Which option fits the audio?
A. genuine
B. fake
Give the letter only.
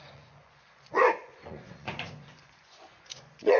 B